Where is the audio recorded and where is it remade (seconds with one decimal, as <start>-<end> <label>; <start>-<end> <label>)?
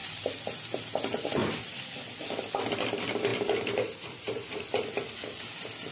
0.0-1.4 recorded; 1.4-2.5 remade; 2.5-3.3 recorded; 3.3-5.4 remade; 5.4-5.9 recorded